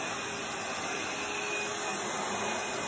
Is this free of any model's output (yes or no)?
yes